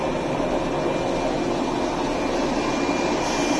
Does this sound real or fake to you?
real